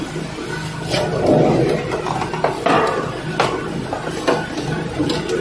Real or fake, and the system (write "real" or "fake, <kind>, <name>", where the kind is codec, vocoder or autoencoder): real